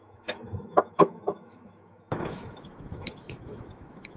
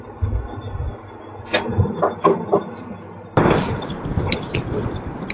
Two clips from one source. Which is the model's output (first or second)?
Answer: first